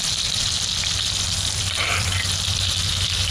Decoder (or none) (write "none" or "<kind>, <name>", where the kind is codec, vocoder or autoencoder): vocoder, BigVGAN v2